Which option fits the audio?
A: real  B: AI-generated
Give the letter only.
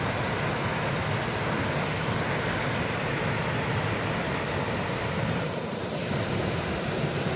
A